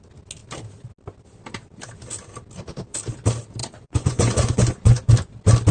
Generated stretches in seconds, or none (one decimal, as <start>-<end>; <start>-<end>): 3.6-5.1